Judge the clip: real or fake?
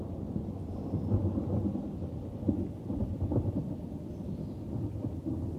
fake